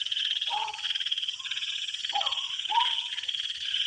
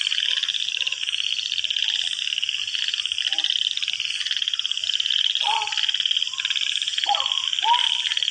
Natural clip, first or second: second